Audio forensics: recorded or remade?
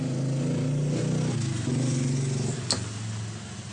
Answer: recorded